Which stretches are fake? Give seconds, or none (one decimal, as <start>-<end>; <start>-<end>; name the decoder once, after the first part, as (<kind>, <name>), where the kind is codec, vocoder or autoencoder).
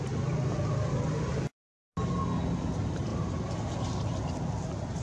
none